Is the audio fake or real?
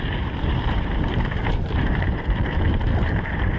fake